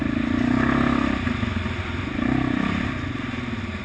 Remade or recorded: recorded